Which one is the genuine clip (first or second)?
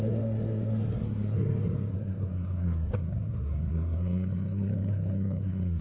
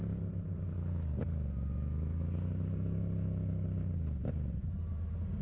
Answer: second